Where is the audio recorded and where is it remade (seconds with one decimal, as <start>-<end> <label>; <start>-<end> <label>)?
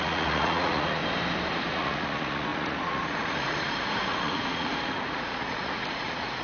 0.0-1.0 remade; 1.0-1.7 recorded; 1.7-6.4 remade